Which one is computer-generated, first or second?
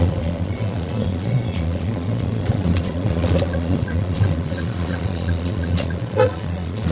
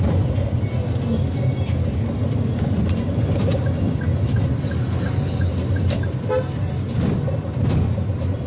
first